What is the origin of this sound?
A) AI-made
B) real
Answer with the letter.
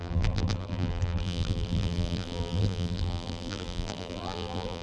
A